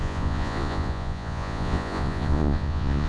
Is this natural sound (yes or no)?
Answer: no